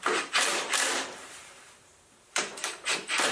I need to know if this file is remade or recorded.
remade